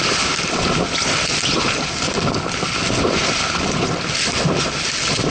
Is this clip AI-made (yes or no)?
no